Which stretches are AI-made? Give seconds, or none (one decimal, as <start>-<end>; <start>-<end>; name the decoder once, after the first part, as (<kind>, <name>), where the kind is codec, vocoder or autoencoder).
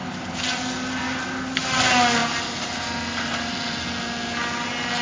none